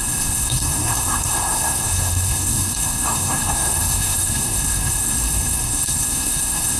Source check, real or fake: fake